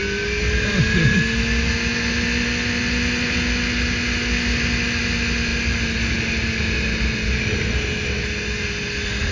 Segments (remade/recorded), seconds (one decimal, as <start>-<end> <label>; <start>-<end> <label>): 0.0-9.3 recorded

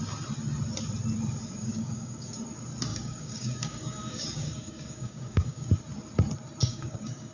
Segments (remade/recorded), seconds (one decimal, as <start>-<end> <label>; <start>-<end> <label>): 0.0-1.6 recorded; 1.6-2.4 remade; 2.4-2.9 recorded; 2.9-5.7 remade; 5.7-6.6 recorded; 6.6-7.3 remade

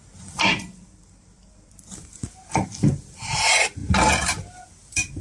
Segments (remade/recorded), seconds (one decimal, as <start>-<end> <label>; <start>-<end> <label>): 0.0-5.2 recorded

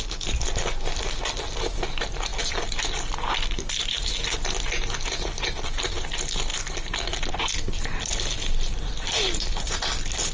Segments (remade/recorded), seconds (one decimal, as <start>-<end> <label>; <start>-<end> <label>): 0.0-10.3 recorded

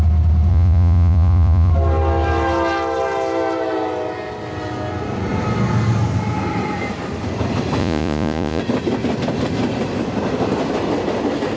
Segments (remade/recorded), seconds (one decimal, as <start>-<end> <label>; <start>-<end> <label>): 0.0-0.5 recorded; 0.5-1.7 remade; 1.7-7.8 recorded; 7.8-8.6 remade; 8.6-11.6 recorded

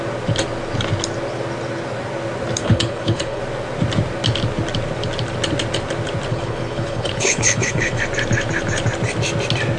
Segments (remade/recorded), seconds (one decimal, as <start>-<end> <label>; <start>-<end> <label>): 0.0-2.6 recorded; 2.6-3.4 remade; 3.4-6.3 recorded; 6.3-8.0 remade; 8.0-9.8 recorded

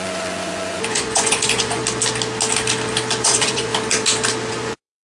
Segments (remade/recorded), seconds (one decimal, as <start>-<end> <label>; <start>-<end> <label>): 0.0-1.8 remade; 1.8-3.2 recorded; 3.2-3.7 remade; 3.7-4.5 recorded; 4.5-5.0 remade